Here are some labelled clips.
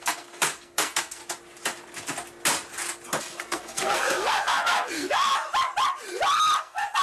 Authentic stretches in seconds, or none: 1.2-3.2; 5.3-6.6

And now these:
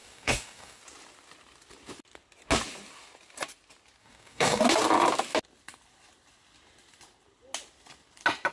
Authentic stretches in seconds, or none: 0.8-4.0; 4.6-8.5